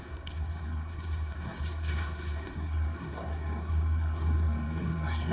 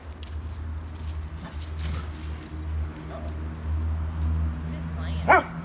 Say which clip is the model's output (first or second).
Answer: first